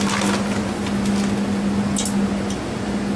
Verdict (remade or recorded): recorded